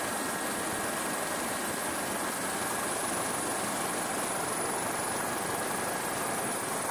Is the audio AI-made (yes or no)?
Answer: no